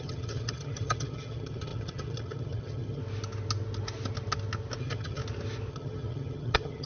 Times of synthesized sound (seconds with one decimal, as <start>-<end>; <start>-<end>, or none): 0.0-3.0; 4.8-5.2; 5.7-6.9